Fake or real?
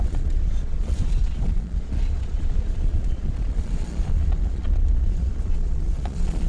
fake